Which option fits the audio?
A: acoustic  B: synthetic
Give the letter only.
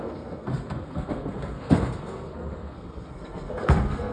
B